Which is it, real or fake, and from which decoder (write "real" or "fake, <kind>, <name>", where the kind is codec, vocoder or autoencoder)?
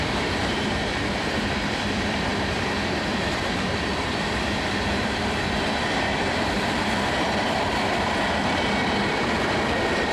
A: fake, vocoder, BigVGAN v2